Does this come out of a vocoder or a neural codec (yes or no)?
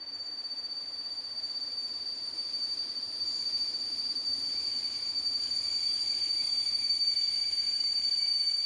yes